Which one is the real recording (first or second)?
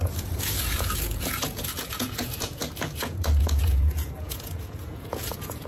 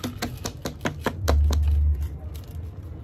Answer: second